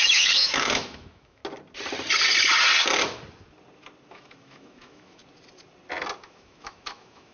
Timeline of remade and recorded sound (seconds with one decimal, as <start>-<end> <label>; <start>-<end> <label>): 0.0-1.4 remade; 1.4-4.1 recorded; 4.1-5.2 remade; 5.2-6.2 recorded; 6.2-7.3 remade